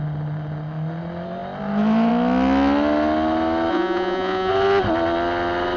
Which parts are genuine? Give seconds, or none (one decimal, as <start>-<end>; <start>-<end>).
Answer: 0.0-3.7; 4.5-5.8